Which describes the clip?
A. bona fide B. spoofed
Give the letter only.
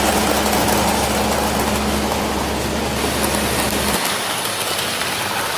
A